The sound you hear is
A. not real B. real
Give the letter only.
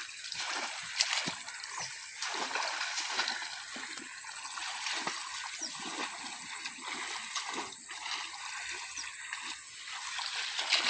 B